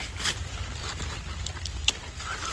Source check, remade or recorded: recorded